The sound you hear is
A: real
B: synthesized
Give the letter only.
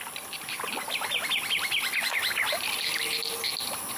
A